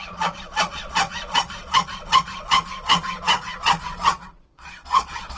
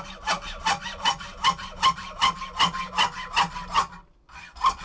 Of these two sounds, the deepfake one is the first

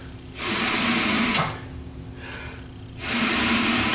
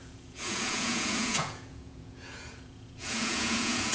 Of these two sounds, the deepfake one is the second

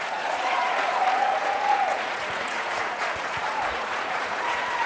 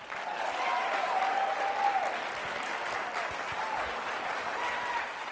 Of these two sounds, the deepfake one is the first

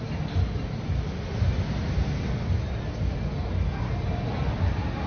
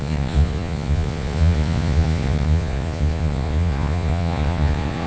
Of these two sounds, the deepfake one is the second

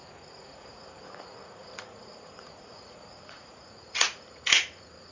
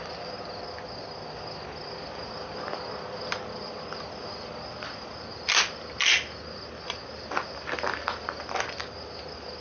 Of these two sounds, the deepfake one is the first